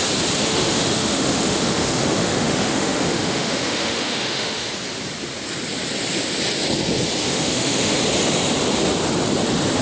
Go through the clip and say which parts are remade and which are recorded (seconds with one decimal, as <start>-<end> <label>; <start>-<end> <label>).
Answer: 0.0-0.4 recorded; 0.4-4.7 remade; 4.7-7.2 recorded; 7.2-8.0 remade; 8.0-9.8 recorded